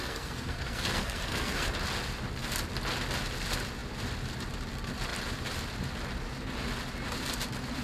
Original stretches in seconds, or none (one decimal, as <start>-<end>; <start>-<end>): 1.7-7.8